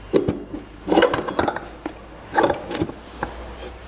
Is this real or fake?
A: real